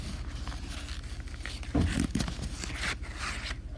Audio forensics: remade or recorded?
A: recorded